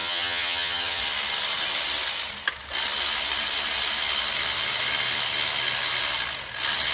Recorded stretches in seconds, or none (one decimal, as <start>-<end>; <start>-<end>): 1.0-6.9